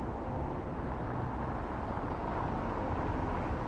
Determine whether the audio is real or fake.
real